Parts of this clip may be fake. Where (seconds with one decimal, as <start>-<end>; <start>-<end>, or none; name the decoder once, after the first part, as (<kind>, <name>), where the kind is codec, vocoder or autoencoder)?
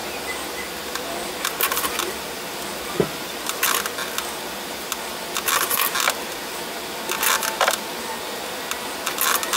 none